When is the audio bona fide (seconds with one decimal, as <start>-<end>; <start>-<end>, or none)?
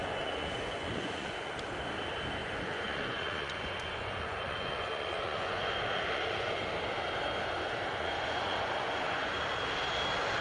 1.5-2.4; 6.7-7.9; 9.4-10.4